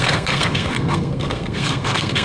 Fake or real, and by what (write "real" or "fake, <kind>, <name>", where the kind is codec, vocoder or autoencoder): fake, codec, SNAC